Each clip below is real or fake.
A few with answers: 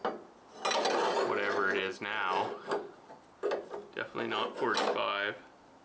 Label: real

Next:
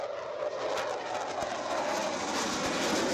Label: real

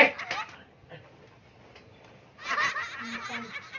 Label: real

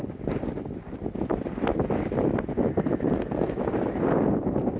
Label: real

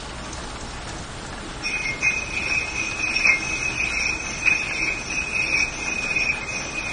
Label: real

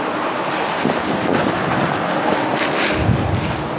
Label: real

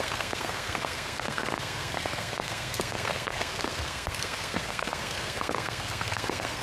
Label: fake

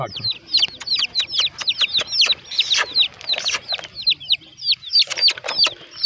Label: real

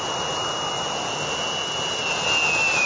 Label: real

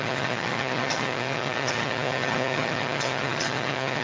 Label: fake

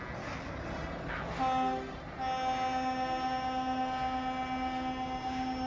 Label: real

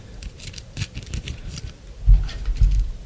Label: real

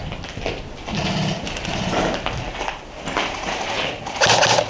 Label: real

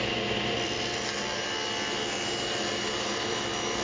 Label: real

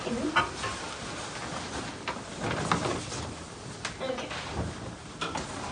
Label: real